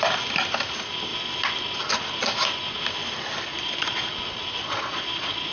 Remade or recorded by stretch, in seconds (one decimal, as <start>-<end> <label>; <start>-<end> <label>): 0.0-3.5 recorded; 3.5-4.1 remade; 4.1-4.6 recorded; 4.6-5.5 remade